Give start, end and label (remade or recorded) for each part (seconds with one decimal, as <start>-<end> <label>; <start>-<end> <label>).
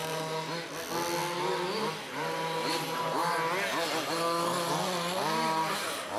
0.0-2.1 recorded; 2.1-3.2 remade; 3.2-5.7 recorded; 5.7-6.2 remade